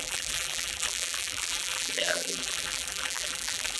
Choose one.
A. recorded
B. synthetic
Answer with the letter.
B